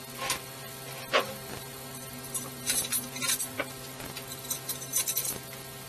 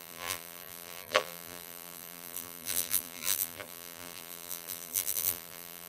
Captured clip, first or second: first